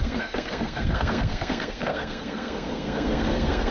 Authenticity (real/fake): fake